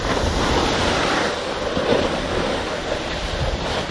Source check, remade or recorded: recorded